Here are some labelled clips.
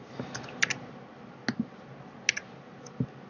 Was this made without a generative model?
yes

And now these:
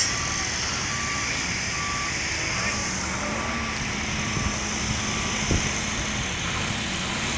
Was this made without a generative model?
yes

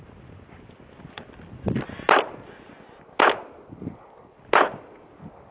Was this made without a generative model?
yes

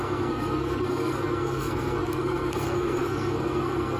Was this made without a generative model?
no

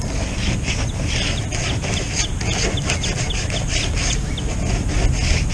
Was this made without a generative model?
yes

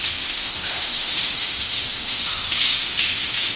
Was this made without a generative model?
no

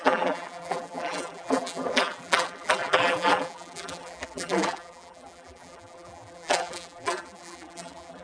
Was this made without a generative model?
no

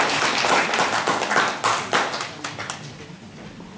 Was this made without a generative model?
yes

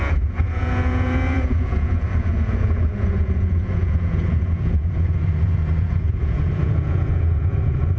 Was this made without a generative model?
no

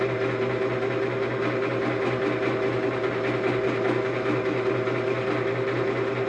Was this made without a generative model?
yes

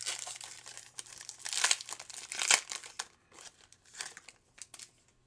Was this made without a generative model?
yes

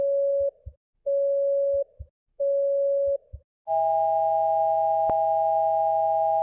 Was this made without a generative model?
yes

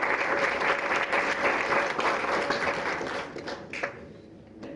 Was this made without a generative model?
yes